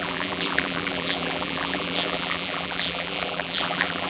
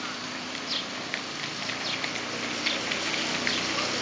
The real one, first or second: second